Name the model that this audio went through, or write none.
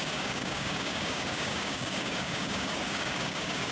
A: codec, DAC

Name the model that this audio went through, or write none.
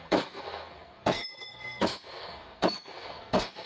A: codec, SNAC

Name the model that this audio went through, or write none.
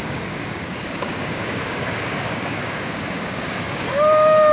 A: codec, DAC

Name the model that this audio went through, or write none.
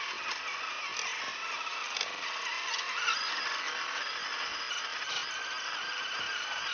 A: none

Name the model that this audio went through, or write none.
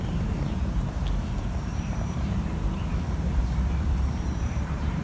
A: vocoder, BigVGAN v2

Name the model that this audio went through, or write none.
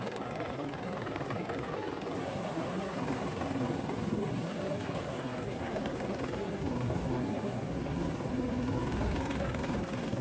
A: codec, SNAC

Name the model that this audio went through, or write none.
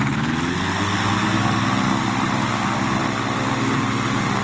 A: none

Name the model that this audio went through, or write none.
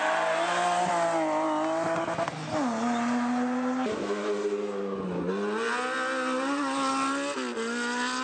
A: none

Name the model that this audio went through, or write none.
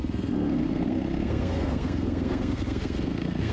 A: codec, SNAC